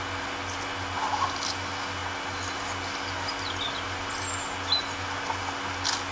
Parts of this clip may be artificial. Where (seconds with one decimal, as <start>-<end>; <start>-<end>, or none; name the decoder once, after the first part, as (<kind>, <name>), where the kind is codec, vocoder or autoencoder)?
none